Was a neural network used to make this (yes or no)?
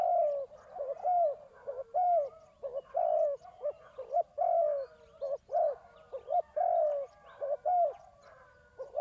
no